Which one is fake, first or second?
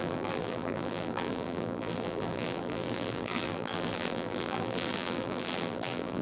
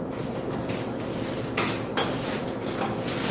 first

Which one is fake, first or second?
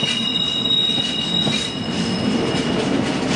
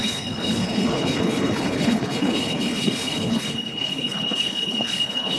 second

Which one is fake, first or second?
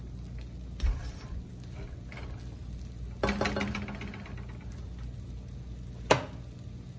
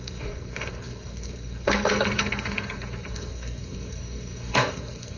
second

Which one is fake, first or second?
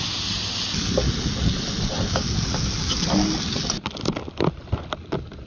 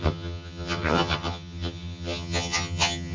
second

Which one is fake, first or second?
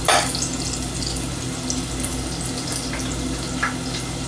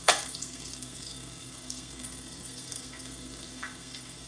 second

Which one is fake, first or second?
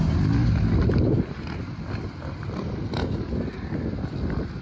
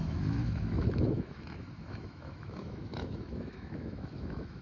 second